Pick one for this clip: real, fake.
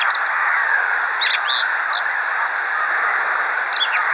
real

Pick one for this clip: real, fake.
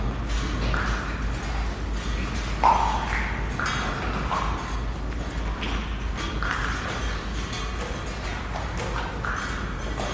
real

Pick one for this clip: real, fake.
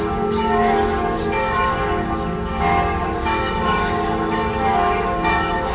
fake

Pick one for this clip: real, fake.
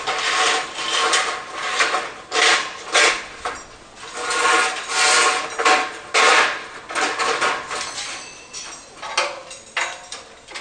real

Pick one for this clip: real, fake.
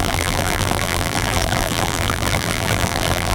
fake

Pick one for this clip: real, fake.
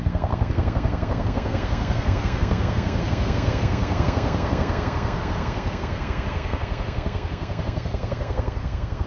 fake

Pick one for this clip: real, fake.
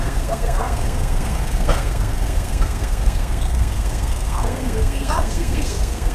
fake